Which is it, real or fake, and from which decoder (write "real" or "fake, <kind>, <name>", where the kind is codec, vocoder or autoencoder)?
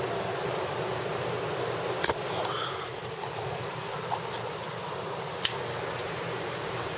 real